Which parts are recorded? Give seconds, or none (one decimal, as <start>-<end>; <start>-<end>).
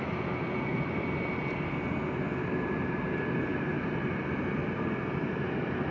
0.0-5.9